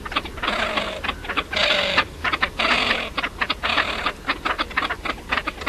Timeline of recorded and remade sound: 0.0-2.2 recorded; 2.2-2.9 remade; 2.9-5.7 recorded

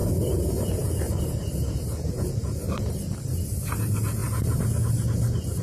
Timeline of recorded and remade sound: 0.0-4.2 remade; 4.2-5.6 recorded